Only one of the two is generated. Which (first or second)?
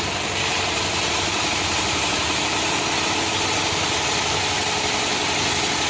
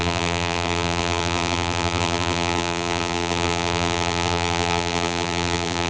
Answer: second